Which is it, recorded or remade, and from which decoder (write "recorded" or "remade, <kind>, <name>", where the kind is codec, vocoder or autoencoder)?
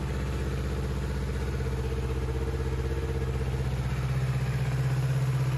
recorded